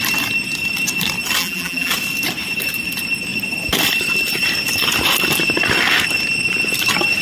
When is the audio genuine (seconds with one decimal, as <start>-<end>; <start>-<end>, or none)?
0.0-1.4; 1.9-7.2